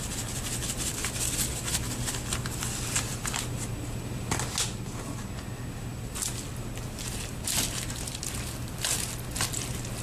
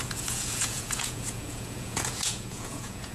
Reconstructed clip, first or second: second